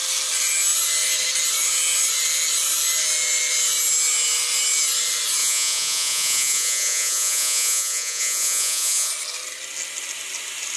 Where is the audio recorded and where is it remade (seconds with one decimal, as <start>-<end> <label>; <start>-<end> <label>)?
0.0-5.4 recorded; 5.4-9.1 remade; 9.1-10.8 recorded